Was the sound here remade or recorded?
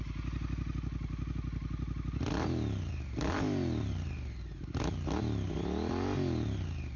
recorded